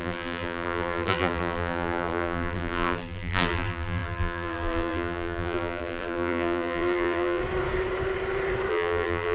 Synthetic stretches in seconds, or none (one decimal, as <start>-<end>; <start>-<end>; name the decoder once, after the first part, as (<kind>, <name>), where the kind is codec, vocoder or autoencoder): 0.0-7.4 (vocoder, BigVGAN v2); 8.7-9.3